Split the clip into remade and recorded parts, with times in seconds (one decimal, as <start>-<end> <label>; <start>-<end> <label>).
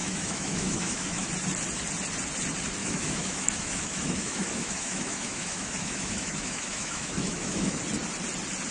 0.0-1.3 remade; 1.3-2.8 recorded; 2.8-7.8 remade; 7.8-8.7 recorded